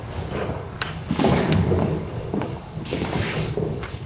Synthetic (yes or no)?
yes